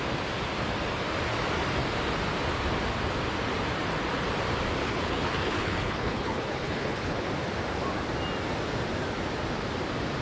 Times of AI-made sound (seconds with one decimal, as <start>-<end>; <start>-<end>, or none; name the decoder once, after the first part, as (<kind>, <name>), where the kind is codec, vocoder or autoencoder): 4.8-7.3 (codec, HILCodec)